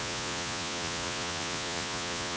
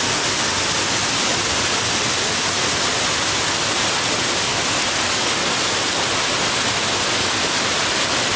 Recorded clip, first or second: second